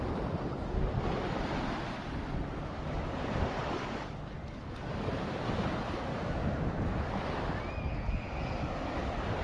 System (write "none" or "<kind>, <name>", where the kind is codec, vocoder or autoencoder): none